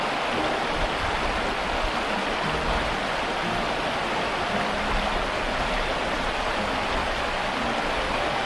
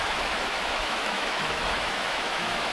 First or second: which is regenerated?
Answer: second